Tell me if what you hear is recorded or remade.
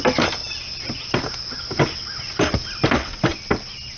recorded